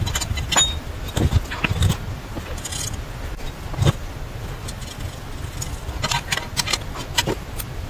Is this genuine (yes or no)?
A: yes